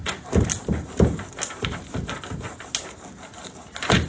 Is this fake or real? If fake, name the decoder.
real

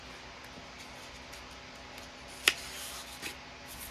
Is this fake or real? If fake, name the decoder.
real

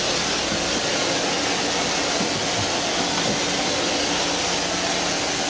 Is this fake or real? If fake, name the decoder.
real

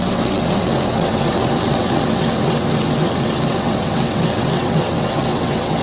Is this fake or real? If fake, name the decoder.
fake, vocoder, WaveNeXt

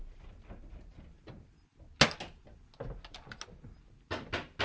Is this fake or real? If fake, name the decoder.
real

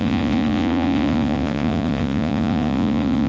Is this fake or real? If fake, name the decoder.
fake, vocoder, Vocos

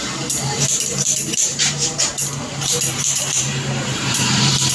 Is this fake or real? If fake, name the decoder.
fake, vocoder, BigVGAN v2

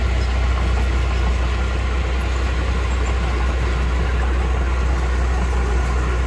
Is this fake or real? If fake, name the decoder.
real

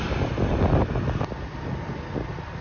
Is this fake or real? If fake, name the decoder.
real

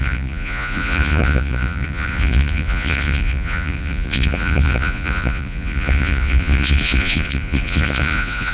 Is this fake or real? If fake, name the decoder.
fake, vocoder, Vocos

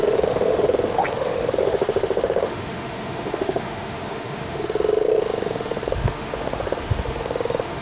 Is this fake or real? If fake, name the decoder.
fake, autoencoder, DAC-VAE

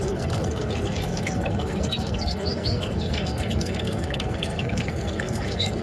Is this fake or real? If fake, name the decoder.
fake, codec, SNAC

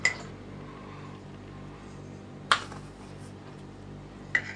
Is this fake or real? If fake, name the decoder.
real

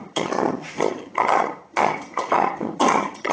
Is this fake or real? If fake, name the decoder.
fake, vocoder, HiFi-GAN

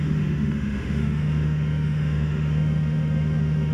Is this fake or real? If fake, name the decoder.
fake, autoencoder, DAC-VAE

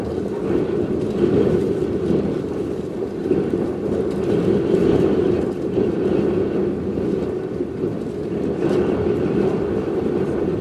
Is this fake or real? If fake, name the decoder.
real